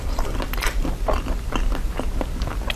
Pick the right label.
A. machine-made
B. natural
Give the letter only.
B